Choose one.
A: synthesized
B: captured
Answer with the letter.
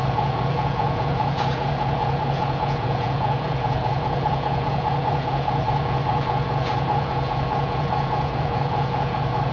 A